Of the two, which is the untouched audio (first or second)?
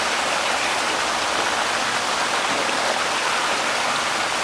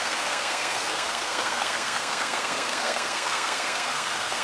first